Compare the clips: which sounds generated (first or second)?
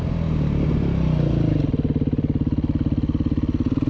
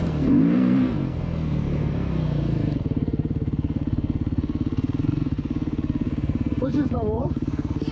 second